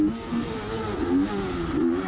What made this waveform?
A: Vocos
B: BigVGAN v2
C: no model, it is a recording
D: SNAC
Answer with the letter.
C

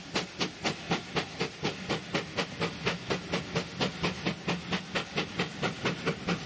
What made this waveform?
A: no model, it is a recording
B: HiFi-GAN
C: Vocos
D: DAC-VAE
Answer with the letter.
A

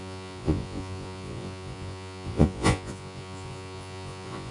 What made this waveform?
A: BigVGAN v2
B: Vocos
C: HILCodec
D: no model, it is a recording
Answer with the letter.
B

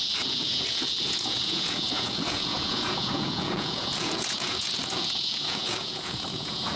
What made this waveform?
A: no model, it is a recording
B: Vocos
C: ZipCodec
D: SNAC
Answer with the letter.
B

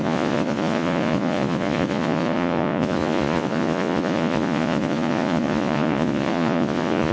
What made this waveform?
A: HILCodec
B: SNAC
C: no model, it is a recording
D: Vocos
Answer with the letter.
D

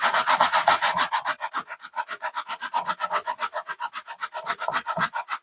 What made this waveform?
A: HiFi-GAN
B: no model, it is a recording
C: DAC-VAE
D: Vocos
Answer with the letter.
D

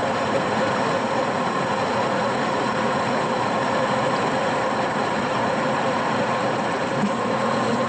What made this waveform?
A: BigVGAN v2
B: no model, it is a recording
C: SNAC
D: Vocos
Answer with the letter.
D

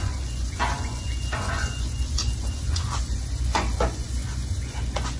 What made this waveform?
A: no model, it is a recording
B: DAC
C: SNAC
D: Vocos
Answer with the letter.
D